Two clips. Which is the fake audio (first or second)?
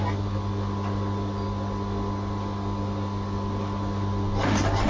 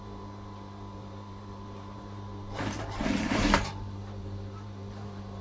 second